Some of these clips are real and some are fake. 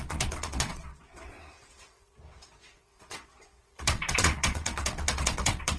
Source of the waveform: fake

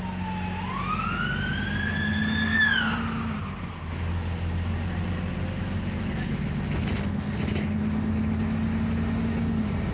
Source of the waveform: real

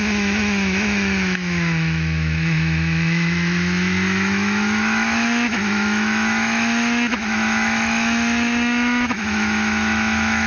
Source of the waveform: fake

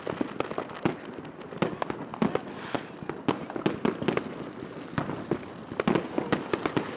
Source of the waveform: real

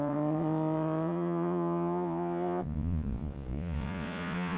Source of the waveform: fake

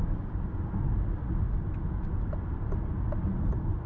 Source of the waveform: fake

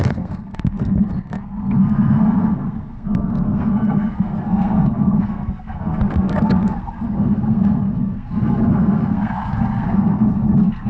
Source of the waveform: fake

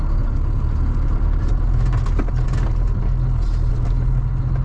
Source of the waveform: real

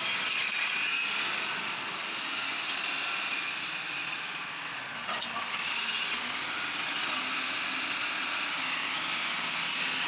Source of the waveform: real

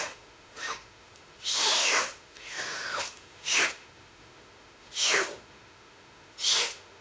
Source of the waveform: fake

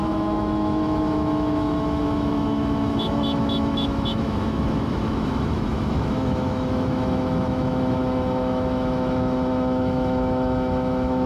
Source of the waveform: fake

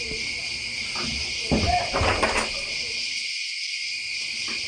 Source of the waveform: real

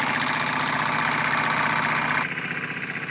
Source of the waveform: real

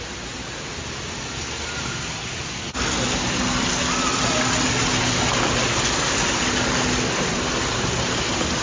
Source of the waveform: real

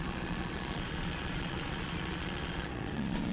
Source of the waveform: fake